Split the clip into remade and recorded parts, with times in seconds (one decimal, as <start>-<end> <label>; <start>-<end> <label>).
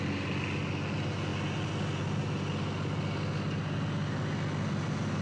0.0-5.2 recorded